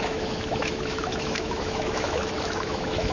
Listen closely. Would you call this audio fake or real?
fake